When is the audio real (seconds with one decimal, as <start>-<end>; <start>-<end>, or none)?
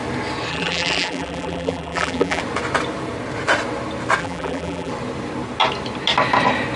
0.0-0.5; 2.4-4.2; 4.9-6.8